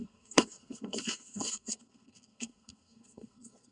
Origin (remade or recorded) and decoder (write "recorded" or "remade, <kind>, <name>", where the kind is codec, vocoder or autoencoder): remade, codec, SNAC